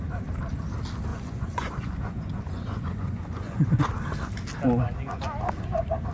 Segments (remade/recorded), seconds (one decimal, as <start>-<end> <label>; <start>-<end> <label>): 0.0-1.1 recorded; 1.1-3.8 remade; 3.8-6.1 recorded